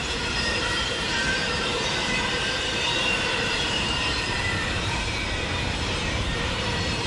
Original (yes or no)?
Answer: no